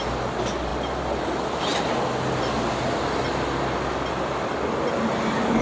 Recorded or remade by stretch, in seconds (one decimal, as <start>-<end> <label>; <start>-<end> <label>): 0.0-5.6 recorded